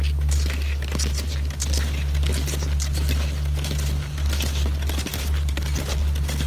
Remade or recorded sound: recorded